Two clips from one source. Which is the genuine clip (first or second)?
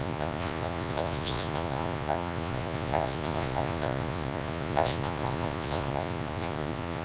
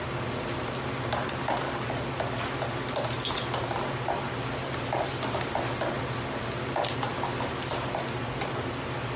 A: second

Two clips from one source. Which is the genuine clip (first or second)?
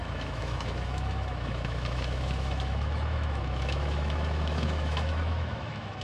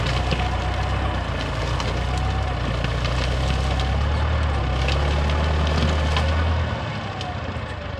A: second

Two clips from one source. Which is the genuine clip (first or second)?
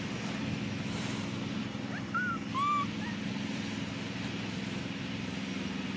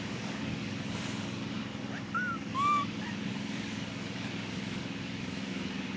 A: first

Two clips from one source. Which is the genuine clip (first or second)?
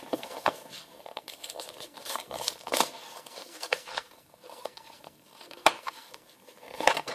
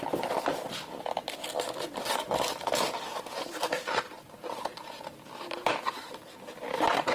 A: second